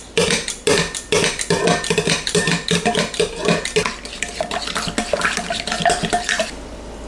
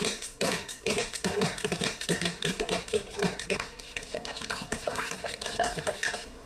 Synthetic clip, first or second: second